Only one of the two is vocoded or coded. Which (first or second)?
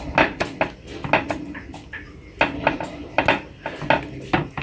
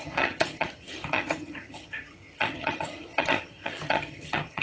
second